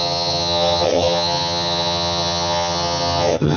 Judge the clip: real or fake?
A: fake